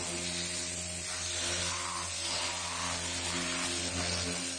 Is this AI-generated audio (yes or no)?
no